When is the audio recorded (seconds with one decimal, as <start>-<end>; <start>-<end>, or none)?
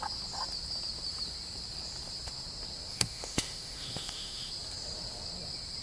0.0-2.9; 4.5-5.8